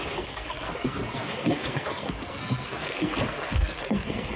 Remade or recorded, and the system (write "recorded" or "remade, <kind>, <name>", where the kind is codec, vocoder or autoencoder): remade, codec, SNAC